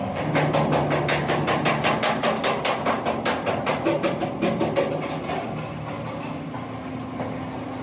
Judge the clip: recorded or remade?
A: recorded